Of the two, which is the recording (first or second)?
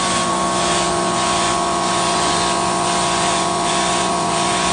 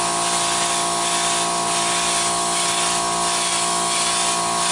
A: second